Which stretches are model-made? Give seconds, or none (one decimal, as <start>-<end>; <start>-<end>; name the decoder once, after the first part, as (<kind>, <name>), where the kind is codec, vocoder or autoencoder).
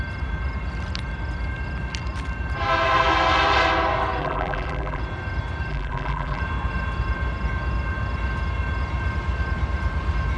4.2-5.0 (vocoder, BigVGAN v2); 5.7-6.4